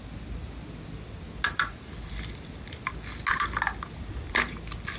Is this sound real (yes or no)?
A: yes